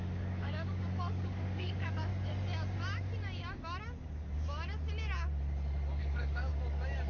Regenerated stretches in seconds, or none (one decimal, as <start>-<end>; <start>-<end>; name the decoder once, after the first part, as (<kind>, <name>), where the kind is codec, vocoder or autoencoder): 0.0-2.1 (codec, DAC); 6.0-6.5